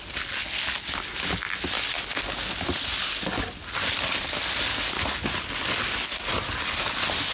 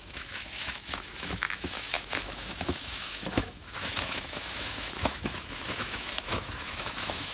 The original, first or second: first